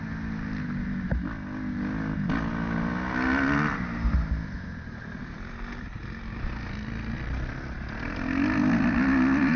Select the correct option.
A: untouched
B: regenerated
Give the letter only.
A